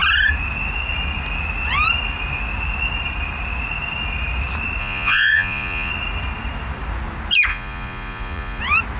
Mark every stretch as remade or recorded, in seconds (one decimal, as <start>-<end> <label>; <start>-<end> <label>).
0.0-4.8 recorded; 4.8-5.9 remade; 5.9-7.5 recorded; 7.5-8.6 remade; 8.6-9.0 recorded

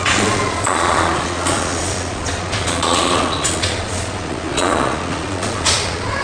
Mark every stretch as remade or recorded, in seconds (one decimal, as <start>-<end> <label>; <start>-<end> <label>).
0.0-6.2 remade

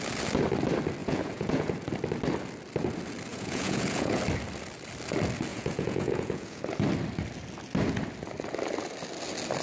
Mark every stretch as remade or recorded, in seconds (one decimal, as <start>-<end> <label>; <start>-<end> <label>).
0.0-1.0 recorded; 1.0-1.7 remade; 1.7-3.3 recorded; 3.3-4.2 remade; 4.2-5.5 recorded; 5.5-6.6 remade; 6.6-9.6 recorded